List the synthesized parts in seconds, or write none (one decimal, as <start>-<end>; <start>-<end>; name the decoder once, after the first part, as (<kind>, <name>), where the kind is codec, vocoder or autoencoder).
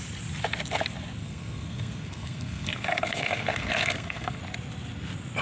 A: 1.2-4.4 (codec, SNAC)